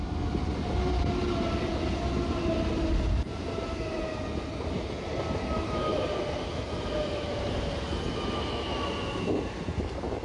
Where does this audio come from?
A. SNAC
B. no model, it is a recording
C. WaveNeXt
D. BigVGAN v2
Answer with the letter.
B